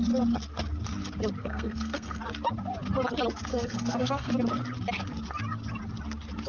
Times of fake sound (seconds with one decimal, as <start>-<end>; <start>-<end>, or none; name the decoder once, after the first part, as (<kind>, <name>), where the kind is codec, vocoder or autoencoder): 1.4-2.2 (codec, SNAC); 3.5-4.3